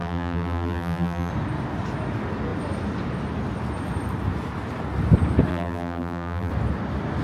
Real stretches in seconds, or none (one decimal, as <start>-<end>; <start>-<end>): 1.3-5.5; 6.5-7.2